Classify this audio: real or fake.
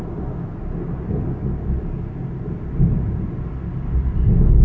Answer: real